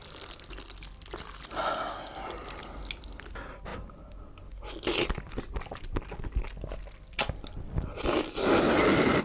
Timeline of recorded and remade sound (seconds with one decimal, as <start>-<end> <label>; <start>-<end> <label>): 0.0-9.2 recorded